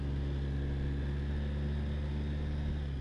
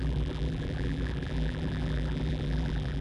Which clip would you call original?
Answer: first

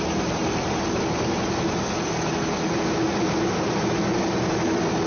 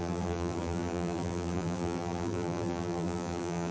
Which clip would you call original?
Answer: first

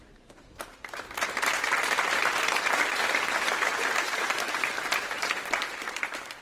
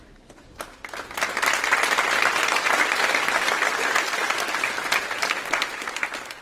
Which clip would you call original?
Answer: second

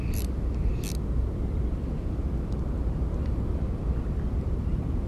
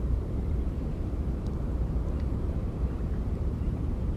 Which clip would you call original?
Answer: first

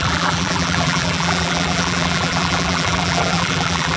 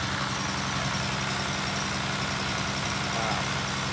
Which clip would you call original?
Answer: second